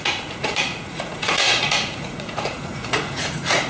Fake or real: fake